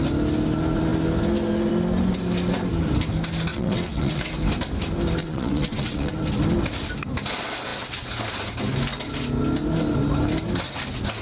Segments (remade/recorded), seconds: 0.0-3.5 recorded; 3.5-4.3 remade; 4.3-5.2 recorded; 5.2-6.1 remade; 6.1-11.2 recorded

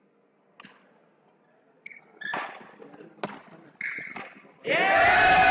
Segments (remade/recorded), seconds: 0.0-5.5 recorded

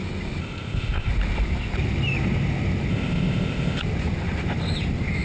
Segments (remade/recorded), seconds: 0.0-0.4 recorded; 0.4-1.1 remade; 1.1-2.9 recorded; 2.9-3.8 remade; 3.8-5.2 recorded

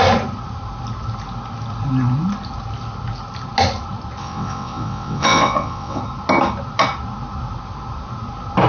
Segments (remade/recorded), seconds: 0.0-4.2 recorded; 4.2-6.0 remade; 6.0-8.7 recorded

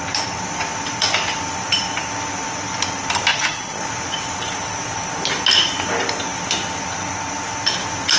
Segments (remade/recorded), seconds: 0.0-3.3 recorded; 3.3-3.8 remade; 3.8-8.2 recorded

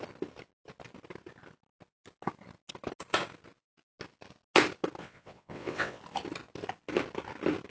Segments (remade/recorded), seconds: 0.0-5.0 recorded; 5.0-6.0 remade; 6.0-7.7 recorded